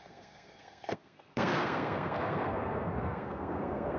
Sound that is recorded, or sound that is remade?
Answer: remade